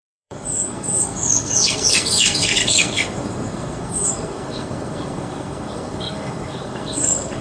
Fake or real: fake